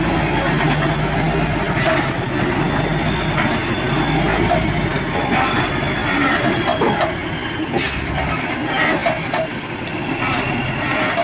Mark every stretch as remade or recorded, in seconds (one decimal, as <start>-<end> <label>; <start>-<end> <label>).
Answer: 0.0-11.2 recorded